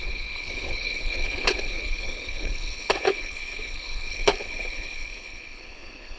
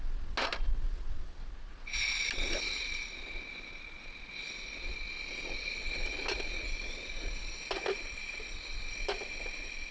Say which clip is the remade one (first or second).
first